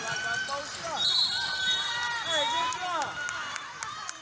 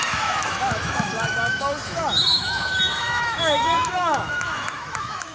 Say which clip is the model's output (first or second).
second